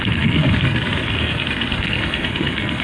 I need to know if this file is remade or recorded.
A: remade